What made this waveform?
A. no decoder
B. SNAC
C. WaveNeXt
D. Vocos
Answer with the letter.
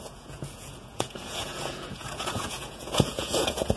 D